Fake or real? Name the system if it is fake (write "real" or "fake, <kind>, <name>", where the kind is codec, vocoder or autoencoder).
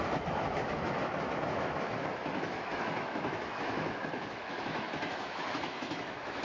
fake, autoencoder, DAC-VAE